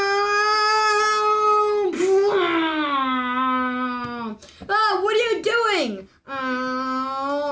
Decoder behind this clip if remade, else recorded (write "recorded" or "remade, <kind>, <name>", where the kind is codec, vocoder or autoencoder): recorded